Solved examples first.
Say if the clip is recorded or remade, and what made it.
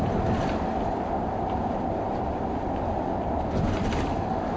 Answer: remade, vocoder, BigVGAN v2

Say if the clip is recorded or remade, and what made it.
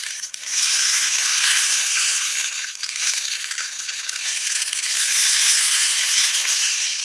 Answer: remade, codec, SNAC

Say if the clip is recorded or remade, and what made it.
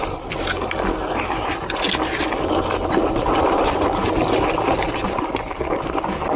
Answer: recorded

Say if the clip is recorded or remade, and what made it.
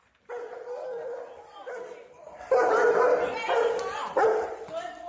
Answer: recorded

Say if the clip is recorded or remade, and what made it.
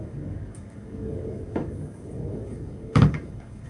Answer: remade, codec, DAC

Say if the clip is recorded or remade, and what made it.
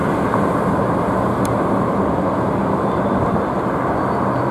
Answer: recorded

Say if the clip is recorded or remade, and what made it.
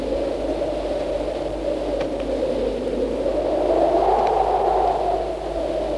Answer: recorded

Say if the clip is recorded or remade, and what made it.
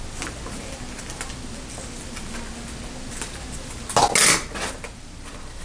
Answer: recorded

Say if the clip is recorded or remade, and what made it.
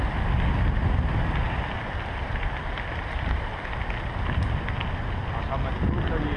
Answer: recorded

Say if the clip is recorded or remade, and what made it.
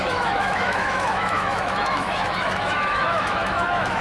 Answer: remade, autoencoder, DAC-VAE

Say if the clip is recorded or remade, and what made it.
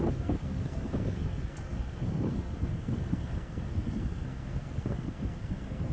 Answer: remade, codec, SNAC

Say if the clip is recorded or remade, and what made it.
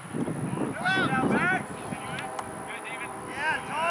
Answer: recorded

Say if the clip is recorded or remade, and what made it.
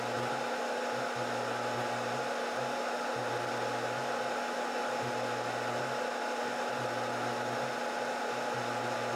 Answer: recorded